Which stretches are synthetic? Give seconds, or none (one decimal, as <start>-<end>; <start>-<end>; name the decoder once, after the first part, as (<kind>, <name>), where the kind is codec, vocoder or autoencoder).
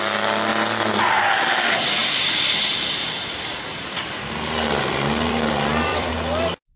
2.0-6.1 (vocoder, BigVGAN v2)